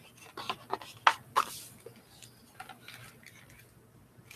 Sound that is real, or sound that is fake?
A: real